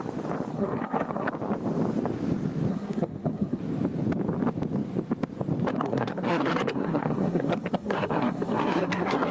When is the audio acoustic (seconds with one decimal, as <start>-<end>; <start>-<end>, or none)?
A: 0.0-0.5; 1.3-2.7; 3.6-5.7